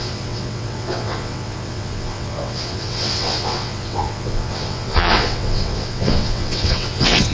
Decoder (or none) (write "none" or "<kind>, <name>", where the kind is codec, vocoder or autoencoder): vocoder, WaveNeXt